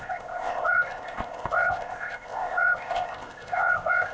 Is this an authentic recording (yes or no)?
no